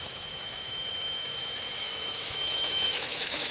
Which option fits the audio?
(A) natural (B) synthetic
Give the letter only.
B